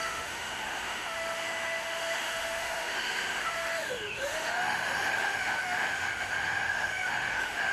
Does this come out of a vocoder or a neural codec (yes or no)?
yes